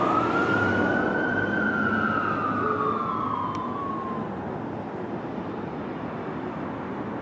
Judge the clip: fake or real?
real